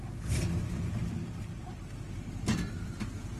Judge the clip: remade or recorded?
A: remade